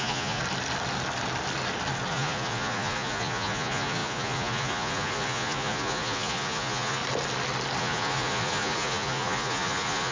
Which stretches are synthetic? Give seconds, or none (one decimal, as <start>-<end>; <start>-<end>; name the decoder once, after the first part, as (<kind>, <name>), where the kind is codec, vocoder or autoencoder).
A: 0.0-0.4 (vocoder, Vocos); 2.1-7.0; 7.8-10.1